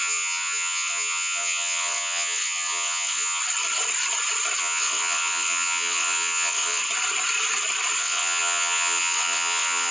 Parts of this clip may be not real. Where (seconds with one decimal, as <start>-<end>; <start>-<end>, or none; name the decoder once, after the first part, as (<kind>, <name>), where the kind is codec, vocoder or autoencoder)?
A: 0.0-3.4 (vocoder, WaveNeXt); 4.6-6.8; 8.0-9.9